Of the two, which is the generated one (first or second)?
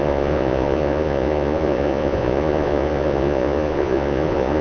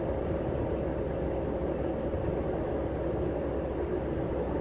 first